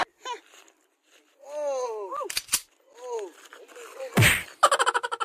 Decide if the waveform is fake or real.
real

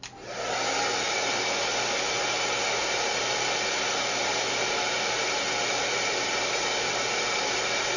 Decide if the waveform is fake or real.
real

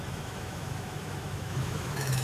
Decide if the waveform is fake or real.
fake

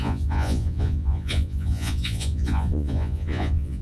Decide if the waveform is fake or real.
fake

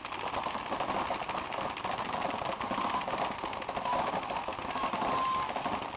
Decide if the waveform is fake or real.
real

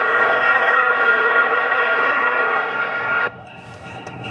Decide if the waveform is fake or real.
fake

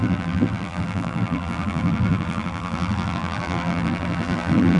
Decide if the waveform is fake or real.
fake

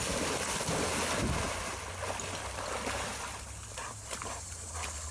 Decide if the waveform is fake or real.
real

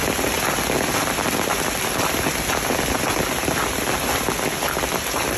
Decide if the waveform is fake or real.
real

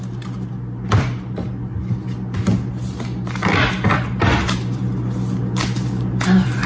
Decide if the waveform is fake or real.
real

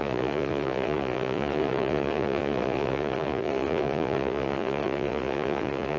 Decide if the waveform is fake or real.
fake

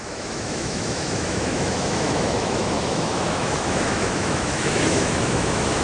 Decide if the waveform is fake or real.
fake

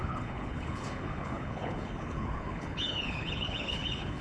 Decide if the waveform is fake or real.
fake